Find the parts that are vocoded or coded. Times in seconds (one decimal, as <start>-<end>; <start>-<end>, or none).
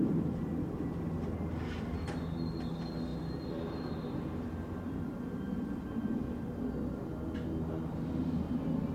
none